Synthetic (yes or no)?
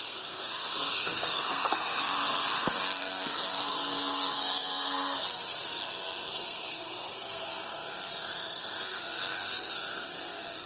yes